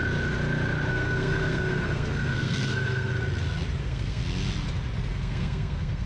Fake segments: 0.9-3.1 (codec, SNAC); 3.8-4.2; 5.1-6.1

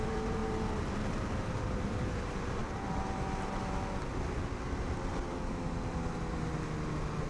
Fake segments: 0.0-2.6 (vocoder, BigVGAN v2)

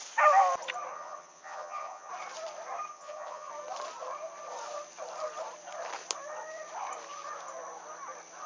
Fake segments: 0.9-2.1 (vocoder, HiFi-GAN); 2.9-3.5